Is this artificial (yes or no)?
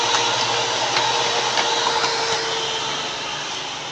no